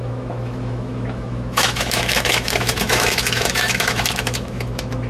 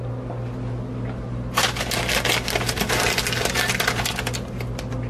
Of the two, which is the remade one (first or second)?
first